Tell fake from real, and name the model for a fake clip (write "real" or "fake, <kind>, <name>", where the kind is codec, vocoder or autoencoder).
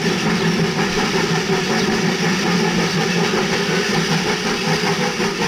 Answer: real